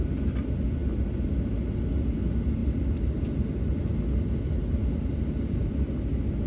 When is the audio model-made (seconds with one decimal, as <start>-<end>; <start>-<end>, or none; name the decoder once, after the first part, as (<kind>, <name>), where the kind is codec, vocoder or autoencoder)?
none